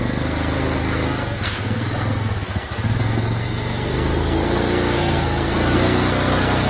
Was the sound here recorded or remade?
remade